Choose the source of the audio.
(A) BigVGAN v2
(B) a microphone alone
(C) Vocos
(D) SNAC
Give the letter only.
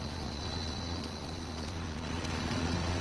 C